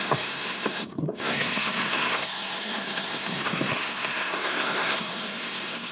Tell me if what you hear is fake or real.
fake